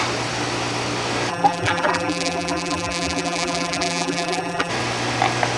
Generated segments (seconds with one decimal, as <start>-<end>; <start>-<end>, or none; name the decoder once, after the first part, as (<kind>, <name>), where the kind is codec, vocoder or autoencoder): 1.3-4.7 (vocoder, BigVGAN v2)